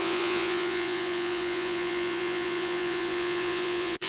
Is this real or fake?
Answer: fake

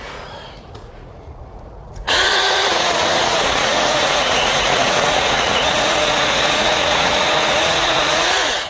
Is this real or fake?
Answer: fake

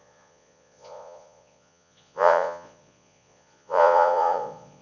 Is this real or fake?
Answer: fake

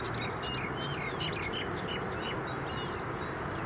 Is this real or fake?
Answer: real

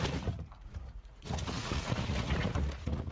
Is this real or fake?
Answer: fake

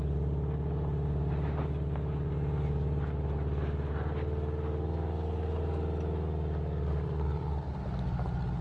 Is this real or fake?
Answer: real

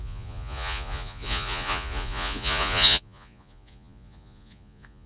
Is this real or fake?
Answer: fake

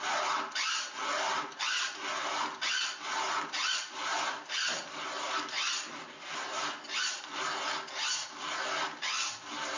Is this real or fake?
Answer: real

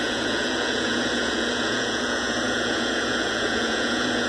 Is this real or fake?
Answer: fake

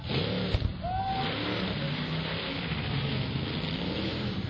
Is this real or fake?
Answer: real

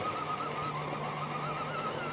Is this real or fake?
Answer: real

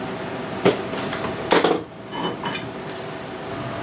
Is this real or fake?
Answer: real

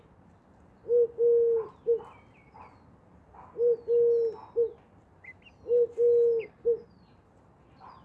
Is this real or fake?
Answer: real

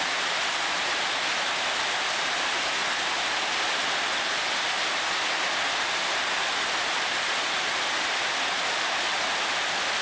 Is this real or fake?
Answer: real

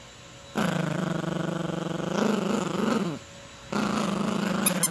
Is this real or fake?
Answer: real